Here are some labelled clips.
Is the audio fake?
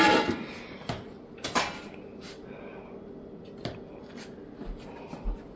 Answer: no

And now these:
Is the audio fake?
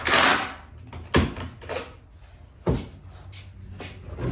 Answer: no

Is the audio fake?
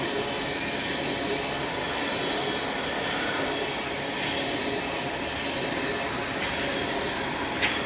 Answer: no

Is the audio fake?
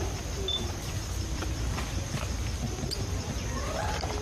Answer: no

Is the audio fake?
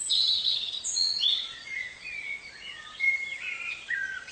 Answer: yes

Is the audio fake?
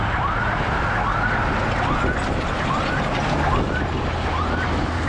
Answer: no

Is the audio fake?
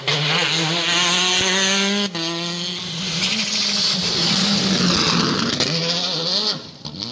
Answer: no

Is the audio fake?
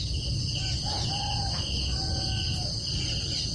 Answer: no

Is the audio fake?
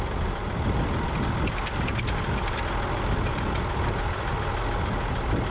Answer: no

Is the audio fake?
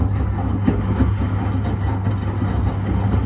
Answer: no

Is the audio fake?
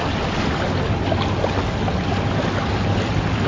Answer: no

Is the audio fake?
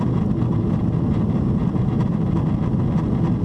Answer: no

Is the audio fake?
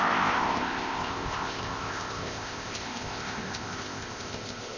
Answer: yes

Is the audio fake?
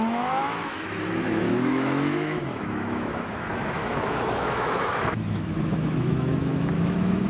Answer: yes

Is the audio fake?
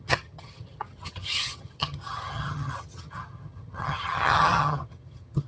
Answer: yes